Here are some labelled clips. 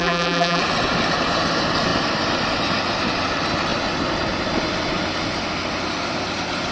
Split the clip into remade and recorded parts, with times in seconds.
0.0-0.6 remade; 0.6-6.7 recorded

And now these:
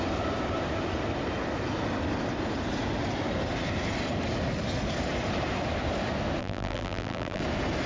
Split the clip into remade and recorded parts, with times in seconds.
0.0-6.4 recorded; 6.4-7.4 remade; 7.4-7.9 recorded

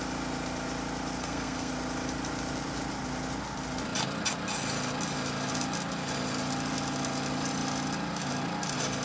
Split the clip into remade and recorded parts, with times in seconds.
0.0-1.2 recorded; 1.2-1.7 remade; 1.7-9.0 recorded

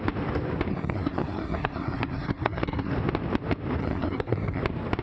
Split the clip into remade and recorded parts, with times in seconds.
0.0-0.7 recorded; 0.7-2.9 remade; 2.9-3.8 recorded; 3.8-4.6 remade; 4.6-5.0 recorded

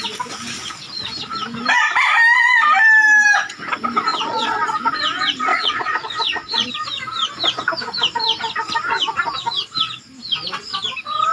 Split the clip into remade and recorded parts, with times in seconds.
0.0-4.1 recorded; 4.1-4.8 remade; 4.8-5.5 recorded; 5.5-6.7 remade; 6.7-11.3 recorded